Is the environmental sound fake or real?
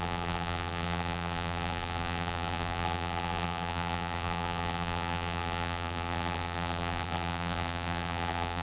fake